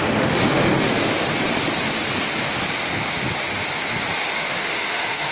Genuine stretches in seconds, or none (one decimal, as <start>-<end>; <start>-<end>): 0.9-4.1